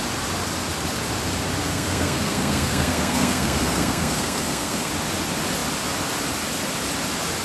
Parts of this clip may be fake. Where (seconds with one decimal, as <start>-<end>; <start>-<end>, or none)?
1.6-4.9